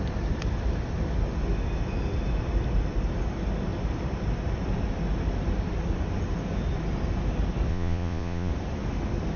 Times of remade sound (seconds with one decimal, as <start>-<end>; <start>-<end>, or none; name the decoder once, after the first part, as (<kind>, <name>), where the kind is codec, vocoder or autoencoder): 7.7-8.5 (vocoder, Vocos)